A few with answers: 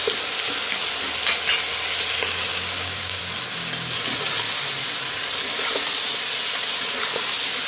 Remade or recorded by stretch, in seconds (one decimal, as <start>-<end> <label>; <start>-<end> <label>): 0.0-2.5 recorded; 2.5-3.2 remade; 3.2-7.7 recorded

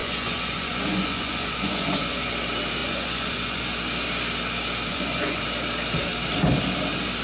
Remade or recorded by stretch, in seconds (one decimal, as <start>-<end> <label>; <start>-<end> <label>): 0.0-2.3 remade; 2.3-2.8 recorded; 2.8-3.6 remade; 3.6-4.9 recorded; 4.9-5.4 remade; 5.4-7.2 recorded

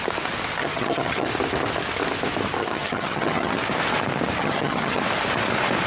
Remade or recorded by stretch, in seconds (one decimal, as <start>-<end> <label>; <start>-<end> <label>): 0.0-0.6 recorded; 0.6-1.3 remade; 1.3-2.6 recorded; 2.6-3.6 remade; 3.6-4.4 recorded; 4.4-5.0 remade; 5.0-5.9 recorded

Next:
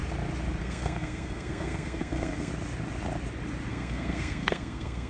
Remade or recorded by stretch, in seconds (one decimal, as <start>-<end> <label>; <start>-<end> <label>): 0.0-0.6 recorded; 0.6-2.5 remade; 2.5-3.7 recorded; 3.7-5.1 remade

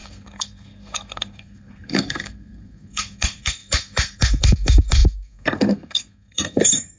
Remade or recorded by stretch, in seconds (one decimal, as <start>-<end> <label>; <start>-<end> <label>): 0.0-7.0 remade

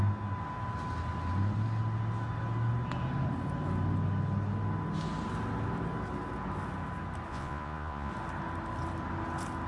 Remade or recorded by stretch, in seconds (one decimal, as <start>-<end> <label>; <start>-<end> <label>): 0.0-7.3 recorded; 7.3-8.1 remade; 8.1-9.7 recorded

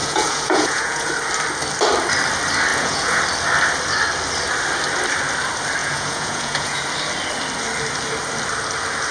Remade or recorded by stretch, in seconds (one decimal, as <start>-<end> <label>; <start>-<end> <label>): 0.0-1.1 remade; 1.1-2.7 recorded; 2.7-3.2 remade; 3.2-5.8 recorded; 5.8-6.8 remade; 6.8-9.1 recorded

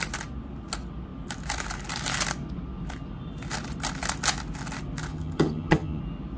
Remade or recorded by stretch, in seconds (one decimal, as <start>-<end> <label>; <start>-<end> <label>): 0.0-5.1 recorded; 5.1-6.0 remade; 6.0-6.4 recorded